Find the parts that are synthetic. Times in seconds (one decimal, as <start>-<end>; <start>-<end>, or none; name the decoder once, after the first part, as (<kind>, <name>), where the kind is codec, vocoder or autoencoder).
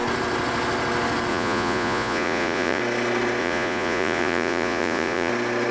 1.3-2.8 (vocoder, Vocos); 3.4-5.3